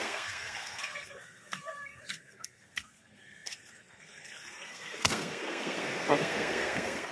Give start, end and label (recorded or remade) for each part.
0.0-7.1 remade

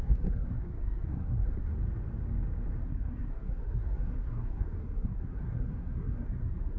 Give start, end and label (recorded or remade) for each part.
0.0-1.7 remade; 1.7-2.8 recorded; 2.8-6.8 remade

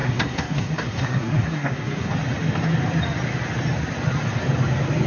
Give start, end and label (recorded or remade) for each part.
0.0-2.1 remade; 2.1-5.1 recorded